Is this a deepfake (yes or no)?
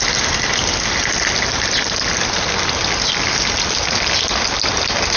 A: no